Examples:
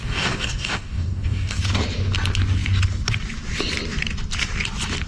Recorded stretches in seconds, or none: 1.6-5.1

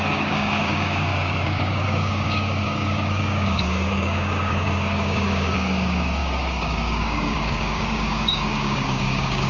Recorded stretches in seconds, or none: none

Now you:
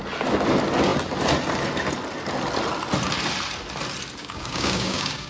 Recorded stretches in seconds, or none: 0.0-4.2